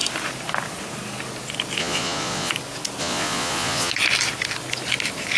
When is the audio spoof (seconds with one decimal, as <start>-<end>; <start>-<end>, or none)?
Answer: 1.8-2.5; 3.0-3.9